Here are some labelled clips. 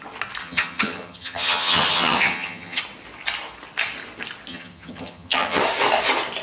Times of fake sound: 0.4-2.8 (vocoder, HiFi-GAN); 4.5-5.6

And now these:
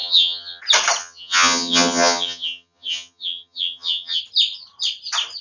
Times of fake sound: 0.0-0.6 (vocoder, HiFi-GAN); 1.0-4.2

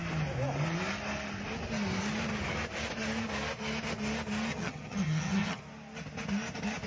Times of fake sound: 4.5-5.6 (vocoder, HiFi-GAN)